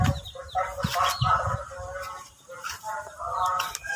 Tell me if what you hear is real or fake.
real